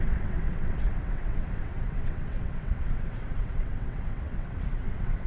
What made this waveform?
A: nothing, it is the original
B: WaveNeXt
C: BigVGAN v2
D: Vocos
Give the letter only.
B